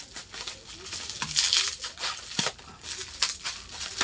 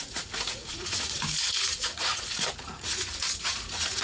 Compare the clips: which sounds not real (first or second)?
second